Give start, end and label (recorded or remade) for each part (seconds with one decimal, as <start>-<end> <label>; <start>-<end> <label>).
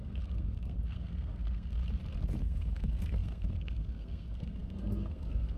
0.0-1.8 remade; 1.8-2.4 recorded; 2.4-5.6 remade